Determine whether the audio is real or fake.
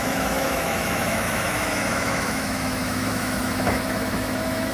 fake